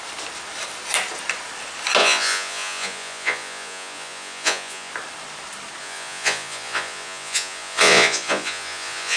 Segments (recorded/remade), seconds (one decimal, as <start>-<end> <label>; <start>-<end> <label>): 0.0-2.0 recorded; 2.0-4.9 remade; 4.9-5.8 recorded; 5.8-9.2 remade